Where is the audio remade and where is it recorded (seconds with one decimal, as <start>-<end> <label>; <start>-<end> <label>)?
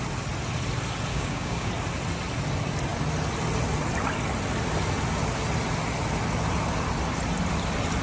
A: 0.0-1.1 recorded; 1.1-1.7 remade; 1.7-8.0 recorded